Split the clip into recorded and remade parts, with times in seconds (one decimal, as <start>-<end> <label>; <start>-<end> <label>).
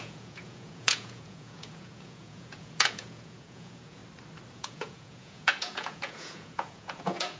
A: 0.0-4.0 remade; 4.0-4.5 recorded; 4.5-7.4 remade